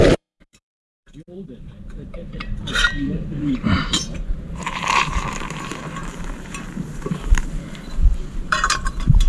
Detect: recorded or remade remade